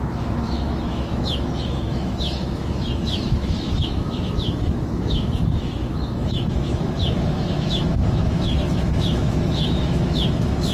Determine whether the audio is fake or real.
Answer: fake